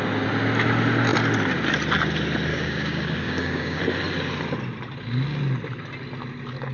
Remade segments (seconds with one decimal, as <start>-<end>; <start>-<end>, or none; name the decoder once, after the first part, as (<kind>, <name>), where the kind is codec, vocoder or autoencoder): 2.5-3.8 (codec, DAC)